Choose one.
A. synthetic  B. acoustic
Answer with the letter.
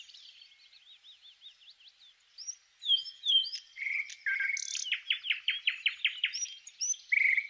B